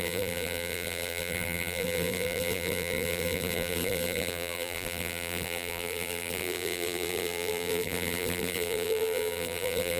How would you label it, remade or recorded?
remade